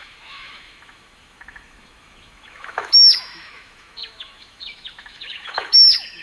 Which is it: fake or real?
fake